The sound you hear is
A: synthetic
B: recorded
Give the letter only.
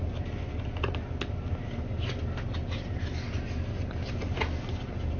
B